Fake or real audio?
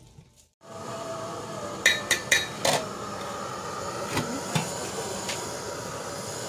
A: fake